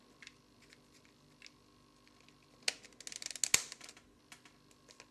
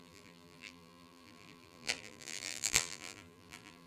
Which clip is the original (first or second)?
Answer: first